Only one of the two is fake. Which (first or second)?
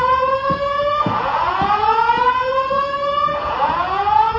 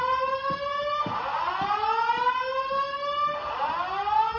first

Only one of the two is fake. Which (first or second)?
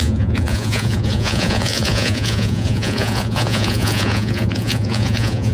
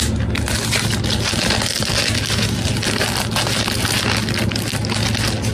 first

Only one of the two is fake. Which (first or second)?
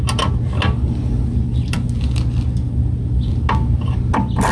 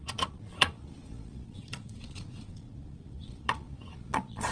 second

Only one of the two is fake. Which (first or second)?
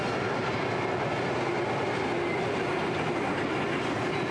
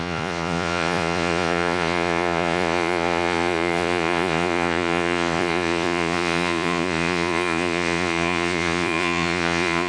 second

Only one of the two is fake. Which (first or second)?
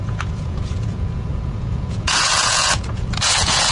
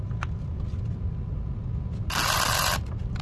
first